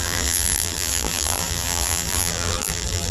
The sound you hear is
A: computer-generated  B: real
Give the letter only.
A